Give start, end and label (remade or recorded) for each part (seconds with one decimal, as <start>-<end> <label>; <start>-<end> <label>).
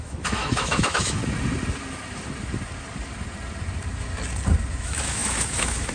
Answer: 0.0-1.2 remade; 1.2-4.7 recorded; 4.7-5.9 remade